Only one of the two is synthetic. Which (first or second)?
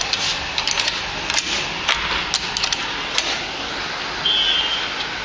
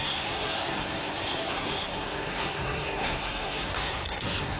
second